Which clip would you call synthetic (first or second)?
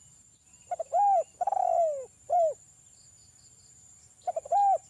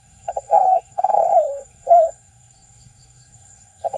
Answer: second